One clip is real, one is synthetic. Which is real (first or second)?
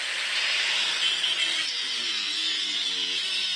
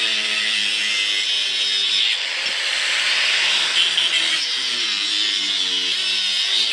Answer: second